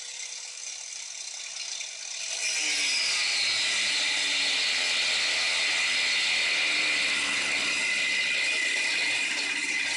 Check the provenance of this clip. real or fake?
real